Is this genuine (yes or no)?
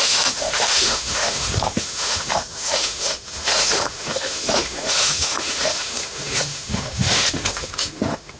no